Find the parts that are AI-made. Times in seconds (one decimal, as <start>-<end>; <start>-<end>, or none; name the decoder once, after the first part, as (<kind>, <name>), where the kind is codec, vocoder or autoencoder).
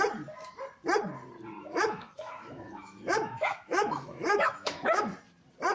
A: 1.6-5.0 (autoencoder, DAC-VAE)